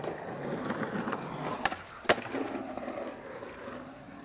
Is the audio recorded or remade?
recorded